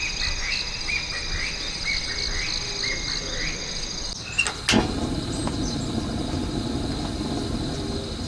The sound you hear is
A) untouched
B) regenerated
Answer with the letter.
A